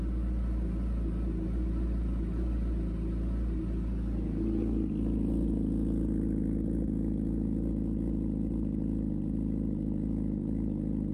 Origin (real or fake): real